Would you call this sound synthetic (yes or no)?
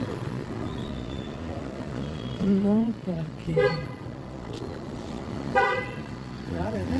yes